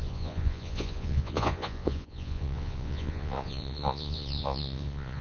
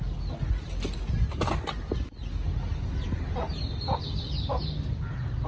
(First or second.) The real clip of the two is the second